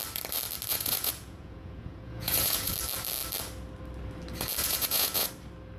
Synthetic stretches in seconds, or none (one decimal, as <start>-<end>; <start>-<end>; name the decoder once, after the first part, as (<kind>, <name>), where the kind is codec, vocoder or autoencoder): 0.7-2.7 (vocoder, Vocos); 4.6-5.3